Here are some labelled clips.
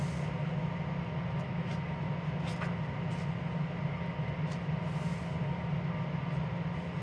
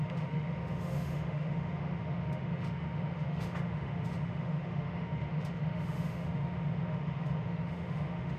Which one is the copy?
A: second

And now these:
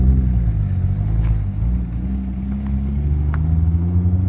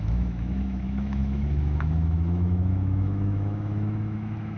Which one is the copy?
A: second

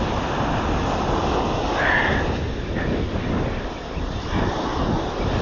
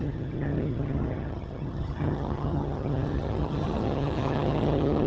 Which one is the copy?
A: second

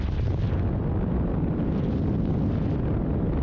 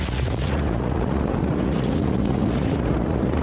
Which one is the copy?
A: second